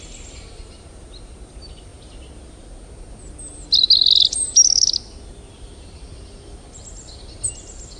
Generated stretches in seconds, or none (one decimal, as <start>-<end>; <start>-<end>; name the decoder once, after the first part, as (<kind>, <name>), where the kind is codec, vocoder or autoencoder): none